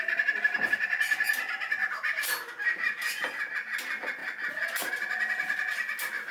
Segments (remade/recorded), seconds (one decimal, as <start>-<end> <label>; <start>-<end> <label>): 0.0-6.3 recorded